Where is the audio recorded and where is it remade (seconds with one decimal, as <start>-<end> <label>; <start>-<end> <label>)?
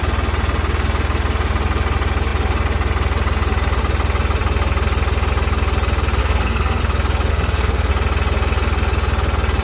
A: 0.0-6.2 recorded; 6.2-6.8 remade; 6.8-7.3 recorded; 7.3-7.9 remade; 7.9-9.6 recorded